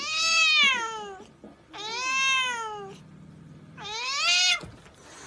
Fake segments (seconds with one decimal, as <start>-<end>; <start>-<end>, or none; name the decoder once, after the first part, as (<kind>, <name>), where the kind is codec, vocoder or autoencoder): none

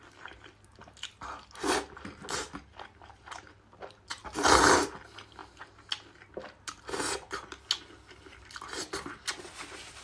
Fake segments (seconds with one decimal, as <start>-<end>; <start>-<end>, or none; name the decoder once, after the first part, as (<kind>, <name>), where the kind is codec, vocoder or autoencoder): none

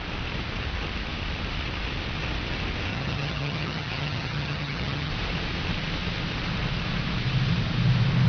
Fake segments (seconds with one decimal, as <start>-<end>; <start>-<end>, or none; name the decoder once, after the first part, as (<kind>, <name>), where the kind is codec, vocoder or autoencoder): 2.9-5.1 (vocoder, HiFi-GAN)

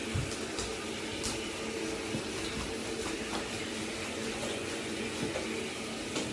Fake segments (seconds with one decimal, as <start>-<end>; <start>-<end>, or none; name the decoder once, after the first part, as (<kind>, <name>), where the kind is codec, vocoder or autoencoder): 4.2-5.4 (vocoder, Vocos)

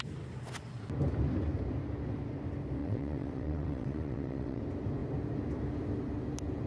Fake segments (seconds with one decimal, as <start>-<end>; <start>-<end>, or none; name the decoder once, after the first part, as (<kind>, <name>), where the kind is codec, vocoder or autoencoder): 2.8-4.6 (vocoder, WaveNeXt)

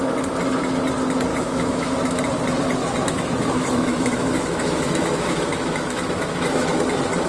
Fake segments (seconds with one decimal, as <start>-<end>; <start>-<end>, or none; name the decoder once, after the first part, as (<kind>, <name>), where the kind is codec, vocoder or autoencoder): 1.3-2.2 (autoencoder, DAC-VAE); 2.8-6.8

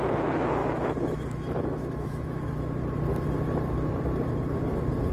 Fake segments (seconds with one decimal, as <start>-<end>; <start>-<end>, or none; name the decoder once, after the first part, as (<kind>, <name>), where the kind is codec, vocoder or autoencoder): 0.6-2.4 (autoencoder, DAC-VAE)